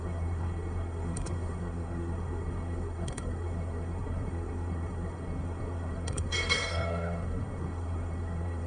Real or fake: fake